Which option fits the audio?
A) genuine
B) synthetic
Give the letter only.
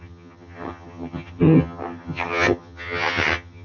B